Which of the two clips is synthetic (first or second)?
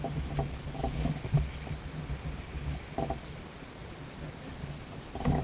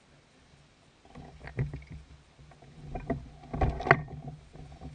first